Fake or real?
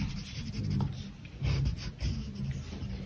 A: real